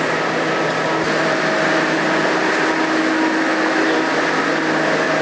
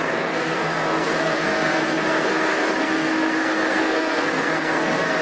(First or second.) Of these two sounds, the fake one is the second